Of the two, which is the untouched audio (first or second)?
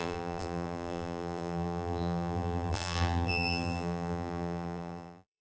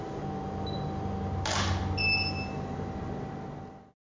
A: second